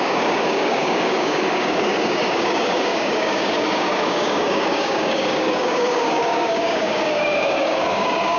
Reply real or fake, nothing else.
fake